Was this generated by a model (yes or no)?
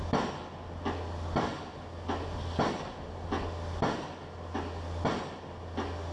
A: no